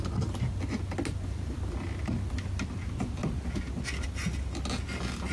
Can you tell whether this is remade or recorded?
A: recorded